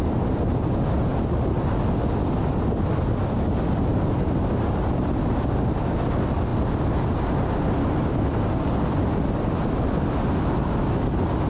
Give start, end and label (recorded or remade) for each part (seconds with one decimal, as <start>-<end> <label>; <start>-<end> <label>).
0.0-11.5 recorded